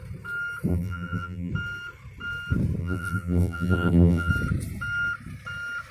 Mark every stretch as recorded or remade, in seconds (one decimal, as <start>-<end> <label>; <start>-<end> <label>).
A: 0.0-0.7 recorded; 0.7-1.5 remade; 1.5-2.8 recorded; 2.8-4.3 remade; 4.3-5.9 recorded